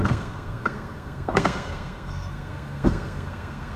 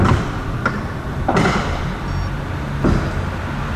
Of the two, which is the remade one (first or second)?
first